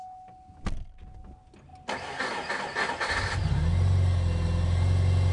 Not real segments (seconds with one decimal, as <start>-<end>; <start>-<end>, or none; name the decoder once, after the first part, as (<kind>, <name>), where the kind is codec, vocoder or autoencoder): none